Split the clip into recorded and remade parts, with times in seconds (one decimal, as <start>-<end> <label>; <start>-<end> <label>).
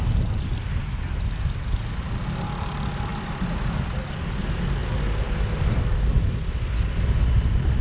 0.0-7.8 recorded